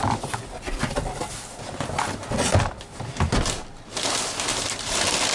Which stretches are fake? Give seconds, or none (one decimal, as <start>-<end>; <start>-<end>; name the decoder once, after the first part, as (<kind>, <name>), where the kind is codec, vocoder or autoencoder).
4.5-5.3 (vocoder, BigVGAN v2)